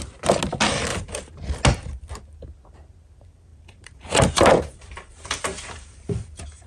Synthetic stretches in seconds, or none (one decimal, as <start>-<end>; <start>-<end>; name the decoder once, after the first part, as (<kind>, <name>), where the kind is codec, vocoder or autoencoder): 0.9-1.5 (vocoder, BigVGAN v2); 3.5-6.3